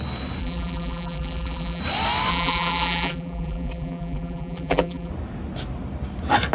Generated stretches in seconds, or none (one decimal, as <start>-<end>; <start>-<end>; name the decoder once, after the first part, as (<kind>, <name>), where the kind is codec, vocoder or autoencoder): 0.4-1.8 (vocoder, BigVGAN v2); 2.3-5.1